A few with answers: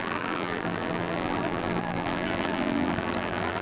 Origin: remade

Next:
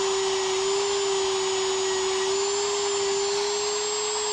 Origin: recorded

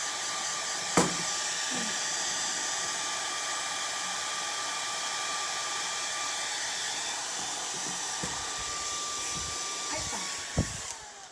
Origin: recorded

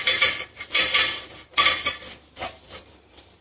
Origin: remade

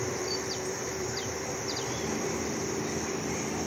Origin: remade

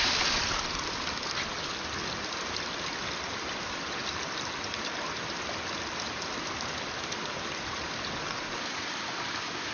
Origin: recorded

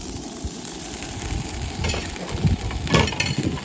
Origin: remade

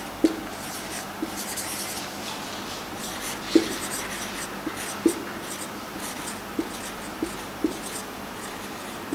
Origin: recorded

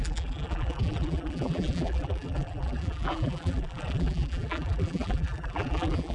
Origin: remade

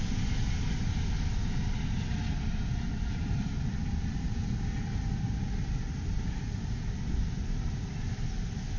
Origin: recorded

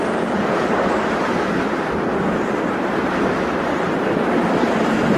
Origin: recorded